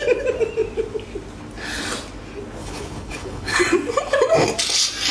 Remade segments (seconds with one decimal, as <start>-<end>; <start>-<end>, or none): 2.6-3.6

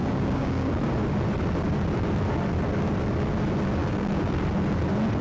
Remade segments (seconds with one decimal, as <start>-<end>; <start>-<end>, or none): 0.0-0.8; 3.8-4.4

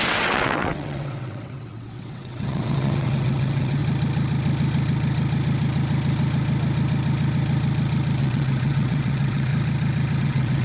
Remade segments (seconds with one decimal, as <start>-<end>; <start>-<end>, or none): 0.0-3.8; 8.2-9.5; 10.2-10.6

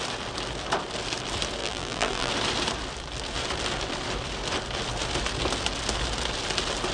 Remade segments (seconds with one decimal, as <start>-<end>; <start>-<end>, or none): 1.6-2.3

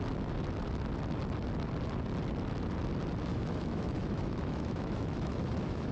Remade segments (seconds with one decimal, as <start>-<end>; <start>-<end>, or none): 3.3-5.9

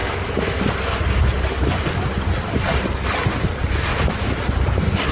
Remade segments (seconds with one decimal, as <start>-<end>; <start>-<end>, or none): 0.0-0.7; 3.9-4.4